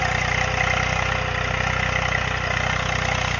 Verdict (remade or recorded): recorded